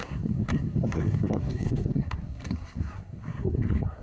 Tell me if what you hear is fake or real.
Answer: fake